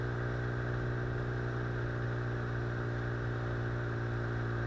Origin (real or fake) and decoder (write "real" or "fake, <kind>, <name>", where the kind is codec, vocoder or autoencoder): real